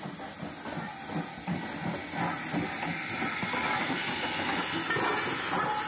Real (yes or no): yes